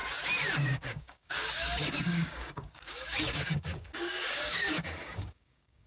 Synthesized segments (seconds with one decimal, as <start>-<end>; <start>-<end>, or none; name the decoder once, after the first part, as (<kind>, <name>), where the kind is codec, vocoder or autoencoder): 0.6-5.9 (codec, DAC)